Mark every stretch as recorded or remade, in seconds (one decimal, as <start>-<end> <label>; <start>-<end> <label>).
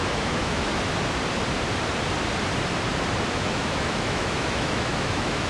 0.0-0.7 remade; 0.7-3.3 recorded; 3.3-5.5 remade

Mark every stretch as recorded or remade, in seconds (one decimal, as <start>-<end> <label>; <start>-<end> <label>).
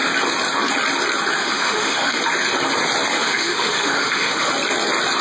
0.0-1.4 recorded; 1.4-2.2 remade; 2.2-3.1 recorded; 3.1-4.5 remade; 4.5-5.2 recorded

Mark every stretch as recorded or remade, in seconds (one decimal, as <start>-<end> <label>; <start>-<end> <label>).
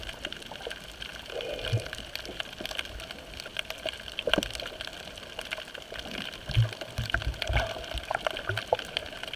0.0-9.4 recorded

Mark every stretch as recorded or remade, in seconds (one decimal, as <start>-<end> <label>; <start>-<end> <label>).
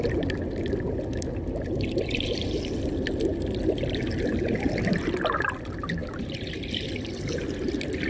0.0-8.1 recorded